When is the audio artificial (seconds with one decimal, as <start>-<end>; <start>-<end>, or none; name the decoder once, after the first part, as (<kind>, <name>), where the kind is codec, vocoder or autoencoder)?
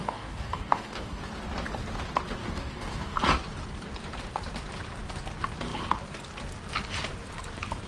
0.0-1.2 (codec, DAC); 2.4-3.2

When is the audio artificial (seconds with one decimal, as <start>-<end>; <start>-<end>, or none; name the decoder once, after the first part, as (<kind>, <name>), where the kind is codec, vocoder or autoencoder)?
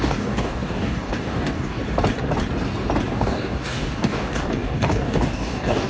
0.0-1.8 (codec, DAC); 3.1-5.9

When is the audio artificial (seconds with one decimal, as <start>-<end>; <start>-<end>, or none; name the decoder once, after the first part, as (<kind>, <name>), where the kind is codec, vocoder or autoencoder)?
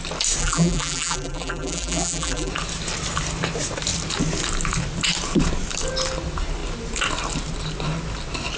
0.4-2.5 (vocoder, BigVGAN v2)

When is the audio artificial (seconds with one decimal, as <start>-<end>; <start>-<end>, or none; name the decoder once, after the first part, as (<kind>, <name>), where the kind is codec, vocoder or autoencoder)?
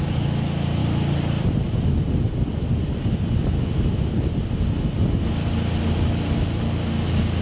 none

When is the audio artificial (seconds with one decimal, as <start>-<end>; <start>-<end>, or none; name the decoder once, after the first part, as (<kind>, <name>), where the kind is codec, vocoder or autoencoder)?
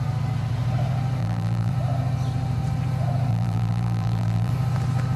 1.2-1.7 (vocoder, BigVGAN v2); 3.3-4.5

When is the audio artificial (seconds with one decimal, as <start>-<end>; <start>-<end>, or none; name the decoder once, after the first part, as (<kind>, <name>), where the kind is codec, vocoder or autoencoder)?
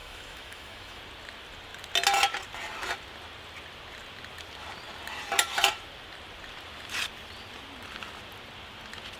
0.0-1.0 (autoencoder, DAC-VAE)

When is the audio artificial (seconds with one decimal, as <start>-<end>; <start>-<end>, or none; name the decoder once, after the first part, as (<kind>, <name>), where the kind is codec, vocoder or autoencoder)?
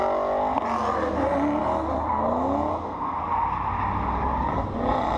2.7-3.2 (codec, SNAC)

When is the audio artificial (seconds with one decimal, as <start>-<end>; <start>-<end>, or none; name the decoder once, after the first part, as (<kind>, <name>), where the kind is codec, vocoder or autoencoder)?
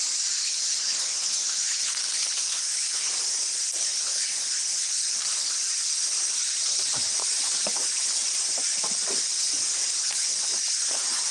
0.4-3.1 (codec, HILCodec); 3.8-5.5; 10.0-10.5